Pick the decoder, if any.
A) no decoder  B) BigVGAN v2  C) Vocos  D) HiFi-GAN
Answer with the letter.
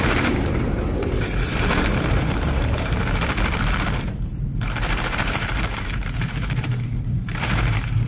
B